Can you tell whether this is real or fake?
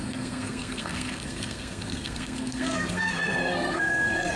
fake